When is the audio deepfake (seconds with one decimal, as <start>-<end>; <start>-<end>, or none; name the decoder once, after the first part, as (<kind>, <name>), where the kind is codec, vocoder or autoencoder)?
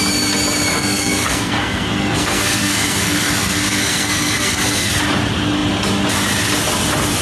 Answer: 0.7-5.0 (codec, SNAC)